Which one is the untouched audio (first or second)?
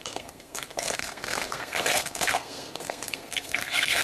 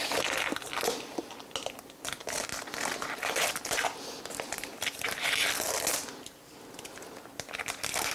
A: second